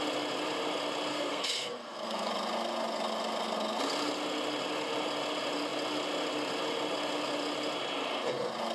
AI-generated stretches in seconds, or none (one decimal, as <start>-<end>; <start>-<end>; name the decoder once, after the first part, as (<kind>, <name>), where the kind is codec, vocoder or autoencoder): 1.1-2.3 (codec, SNAC)